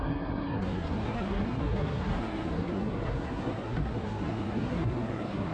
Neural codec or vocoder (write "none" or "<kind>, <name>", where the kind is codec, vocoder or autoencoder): codec, SNAC